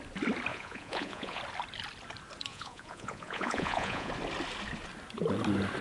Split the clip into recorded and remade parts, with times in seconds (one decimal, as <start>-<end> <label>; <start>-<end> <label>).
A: 0.0-0.5 recorded; 0.5-1.4 remade; 1.4-2.5 recorded; 2.5-4.1 remade; 4.1-5.8 recorded